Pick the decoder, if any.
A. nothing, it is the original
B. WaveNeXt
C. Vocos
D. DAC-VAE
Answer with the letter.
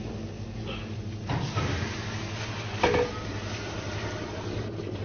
A